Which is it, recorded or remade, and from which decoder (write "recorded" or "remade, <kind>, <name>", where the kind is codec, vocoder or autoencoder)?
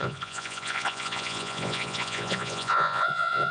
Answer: remade, vocoder, Vocos